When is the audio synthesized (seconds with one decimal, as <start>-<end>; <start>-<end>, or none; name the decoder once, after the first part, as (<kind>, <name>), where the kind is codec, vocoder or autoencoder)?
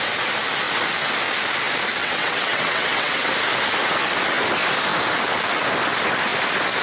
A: 2.0-3.3 (vocoder, WaveNeXt)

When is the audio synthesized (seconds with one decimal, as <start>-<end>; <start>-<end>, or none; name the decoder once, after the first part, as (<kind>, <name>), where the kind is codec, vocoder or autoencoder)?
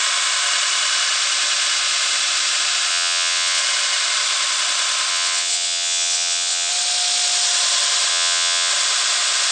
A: 2.9-3.6 (vocoder, WaveNeXt); 5.1-6.7; 8.1-8.7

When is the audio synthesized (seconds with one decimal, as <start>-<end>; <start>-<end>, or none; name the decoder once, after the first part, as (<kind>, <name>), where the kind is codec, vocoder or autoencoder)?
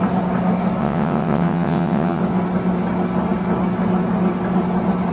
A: 0.8-2.2 (vocoder, WaveNeXt)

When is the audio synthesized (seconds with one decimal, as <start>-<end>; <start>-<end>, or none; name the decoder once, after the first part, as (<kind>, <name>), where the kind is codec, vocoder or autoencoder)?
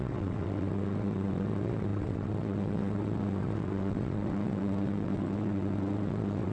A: 0.0-6.5 (vocoder, WaveNeXt)